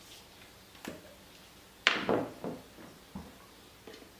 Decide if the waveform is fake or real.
real